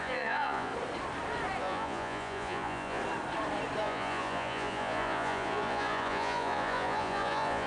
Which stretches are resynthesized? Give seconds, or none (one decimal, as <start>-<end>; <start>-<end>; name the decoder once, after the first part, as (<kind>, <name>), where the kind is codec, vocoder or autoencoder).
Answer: 0.0-0.7 (vocoder, Vocos); 1.6-3.0; 3.8-7.7